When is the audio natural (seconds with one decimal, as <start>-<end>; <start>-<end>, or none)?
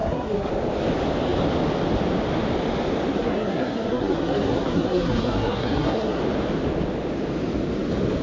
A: 0.5-3.1; 6.2-8.2